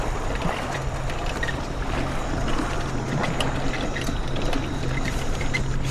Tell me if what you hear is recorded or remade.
remade